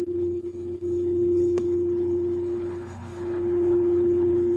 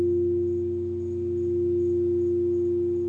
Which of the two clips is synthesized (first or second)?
first